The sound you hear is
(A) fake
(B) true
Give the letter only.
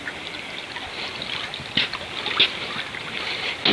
B